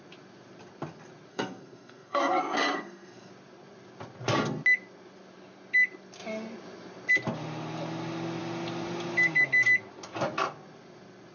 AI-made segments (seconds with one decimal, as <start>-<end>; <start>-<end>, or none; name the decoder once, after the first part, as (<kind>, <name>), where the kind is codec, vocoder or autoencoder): 1.3-3.3 (codec, SNAC)